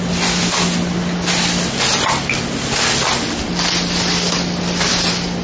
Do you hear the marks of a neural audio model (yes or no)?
no